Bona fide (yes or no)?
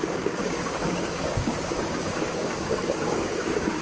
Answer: no